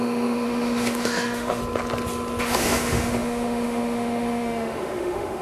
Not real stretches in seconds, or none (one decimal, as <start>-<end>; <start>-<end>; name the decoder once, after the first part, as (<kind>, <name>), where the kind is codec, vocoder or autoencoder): 0.0-1.6 (autoencoder, DAC-VAE); 2.4-5.4